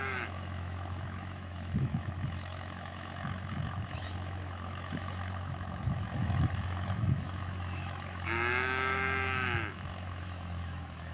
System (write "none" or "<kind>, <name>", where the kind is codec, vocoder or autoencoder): autoencoder, DAC-VAE